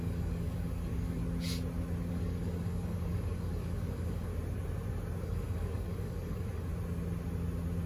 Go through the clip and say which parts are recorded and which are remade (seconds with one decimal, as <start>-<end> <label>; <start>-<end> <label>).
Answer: 0.0-1.2 remade; 1.2-2.1 recorded; 2.1-4.3 remade; 4.3-5.2 recorded; 5.2-6.7 remade; 6.7-7.9 recorded